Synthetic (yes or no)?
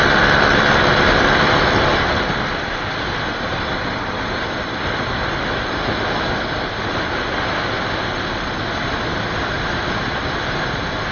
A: no